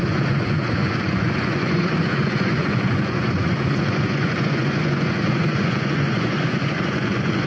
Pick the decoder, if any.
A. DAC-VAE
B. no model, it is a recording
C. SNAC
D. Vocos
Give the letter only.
D